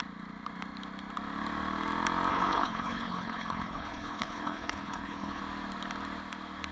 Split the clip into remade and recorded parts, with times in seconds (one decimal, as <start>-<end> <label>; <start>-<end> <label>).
0.0-2.3 recorded; 2.3-5.4 remade; 5.4-6.7 recorded